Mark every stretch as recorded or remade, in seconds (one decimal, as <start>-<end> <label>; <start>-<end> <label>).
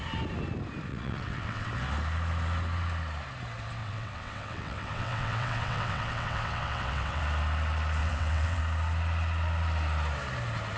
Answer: 0.0-0.9 recorded; 0.9-1.7 remade; 1.7-3.8 recorded; 3.8-7.2 remade; 7.2-8.0 recorded; 8.0-8.6 remade; 8.6-10.8 recorded